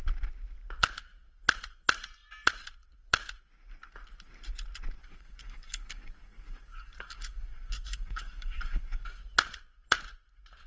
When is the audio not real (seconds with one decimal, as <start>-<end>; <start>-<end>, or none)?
5.0-9.2